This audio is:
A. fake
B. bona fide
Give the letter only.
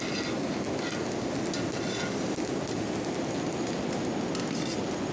B